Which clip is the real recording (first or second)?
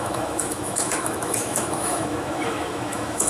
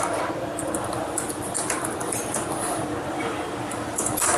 second